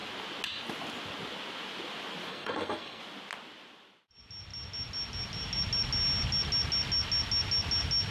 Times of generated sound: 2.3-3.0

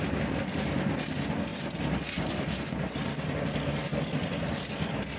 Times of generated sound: none

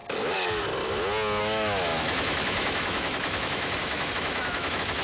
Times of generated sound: 1.4-5.0

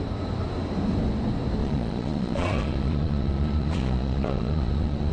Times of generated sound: 1.6-5.1

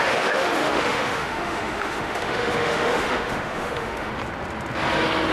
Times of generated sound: 0.0-4.1

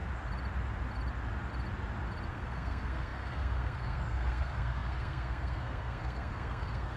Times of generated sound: 2.3-7.0